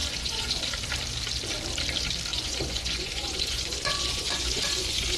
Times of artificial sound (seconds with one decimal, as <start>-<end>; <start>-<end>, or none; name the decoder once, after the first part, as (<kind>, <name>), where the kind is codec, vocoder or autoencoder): 0.0-0.6 (vocoder, Vocos); 2.3-5.2